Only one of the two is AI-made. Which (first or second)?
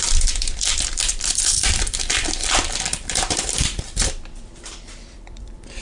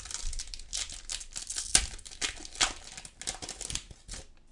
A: first